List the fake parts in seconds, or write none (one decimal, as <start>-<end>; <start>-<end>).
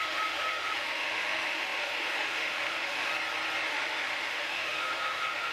0.0-3.1; 3.7-5.5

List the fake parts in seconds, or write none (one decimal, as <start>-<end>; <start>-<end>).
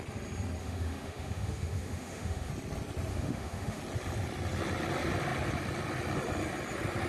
0.6-2.5; 3.1-3.8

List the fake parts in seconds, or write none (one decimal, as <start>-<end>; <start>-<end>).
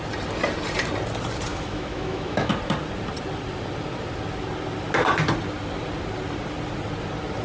1.5-2.5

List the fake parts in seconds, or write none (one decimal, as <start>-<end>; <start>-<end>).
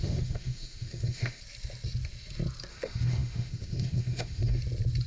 0.0-1.4; 2.7-4.6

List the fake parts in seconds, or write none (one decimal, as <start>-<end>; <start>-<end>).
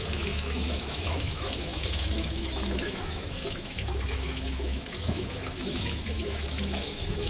0.0-7.3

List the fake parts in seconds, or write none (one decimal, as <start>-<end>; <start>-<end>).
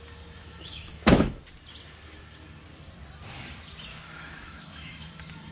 0.4-1.4; 3.9-5.1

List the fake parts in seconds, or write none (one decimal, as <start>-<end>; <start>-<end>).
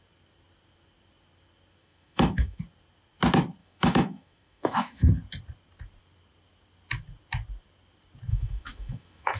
1.8-2.6; 3.6-5.1; 8.3-9.4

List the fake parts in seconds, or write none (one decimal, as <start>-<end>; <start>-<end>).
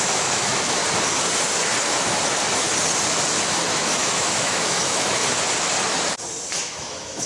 0.0-0.8; 3.5-5.2; 6.7-7.3